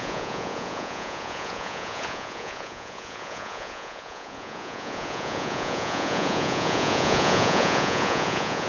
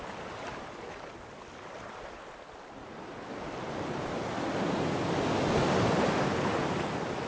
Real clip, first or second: second